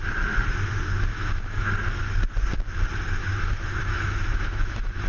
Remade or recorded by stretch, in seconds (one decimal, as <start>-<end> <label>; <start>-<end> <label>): 0.0-1.1 recorded; 1.1-1.7 remade; 1.7-3.2 recorded; 3.2-5.1 remade

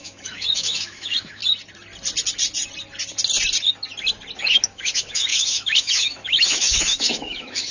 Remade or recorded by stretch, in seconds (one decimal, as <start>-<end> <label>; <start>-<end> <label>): 0.0-1.4 remade; 1.4-4.4 recorded; 4.4-7.7 remade

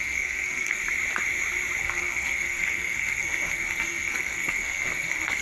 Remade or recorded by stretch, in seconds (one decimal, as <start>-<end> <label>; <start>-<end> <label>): 0.0-0.8 remade; 0.8-1.8 recorded; 1.8-5.4 remade